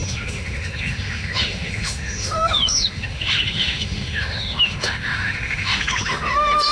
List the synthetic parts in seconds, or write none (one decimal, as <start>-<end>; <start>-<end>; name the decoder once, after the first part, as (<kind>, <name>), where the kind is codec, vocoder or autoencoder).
0.0-6.7 (autoencoder, DAC-VAE)